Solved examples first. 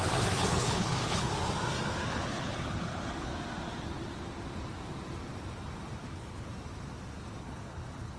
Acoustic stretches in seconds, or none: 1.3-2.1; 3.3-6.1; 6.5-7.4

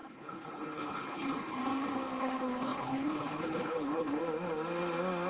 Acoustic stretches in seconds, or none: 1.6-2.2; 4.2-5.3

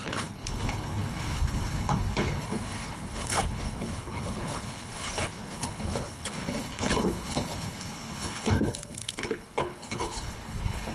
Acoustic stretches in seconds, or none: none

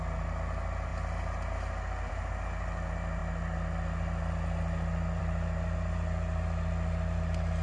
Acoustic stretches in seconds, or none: 0.0-7.6

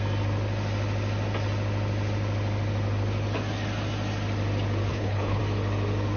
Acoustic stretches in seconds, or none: 0.0-4.9; 5.4-6.2

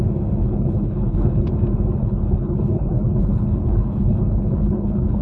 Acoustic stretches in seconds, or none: 0.0-0.4; 1.5-2.0

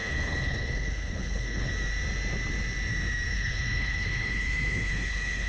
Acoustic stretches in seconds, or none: 1.7-3.3